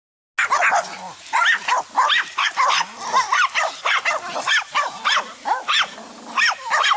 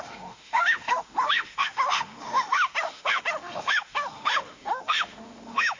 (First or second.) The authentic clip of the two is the first